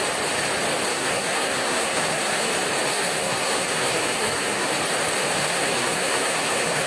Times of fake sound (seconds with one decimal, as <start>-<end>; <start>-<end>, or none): 0.9-2.5; 2.9-4.7; 5.4-6.9